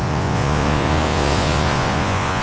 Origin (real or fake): fake